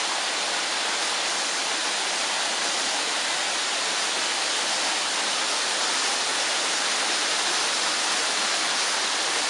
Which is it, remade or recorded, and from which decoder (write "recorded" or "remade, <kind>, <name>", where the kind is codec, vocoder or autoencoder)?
recorded